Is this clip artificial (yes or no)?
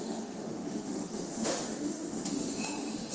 yes